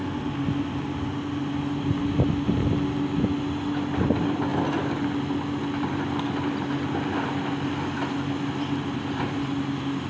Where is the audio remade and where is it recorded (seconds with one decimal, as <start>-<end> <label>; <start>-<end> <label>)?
0.0-10.1 recorded